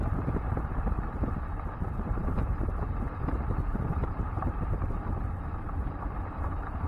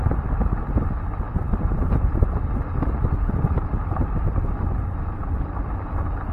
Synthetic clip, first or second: first